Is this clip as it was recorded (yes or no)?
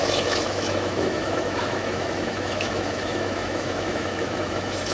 no